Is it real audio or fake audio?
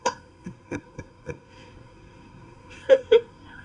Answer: fake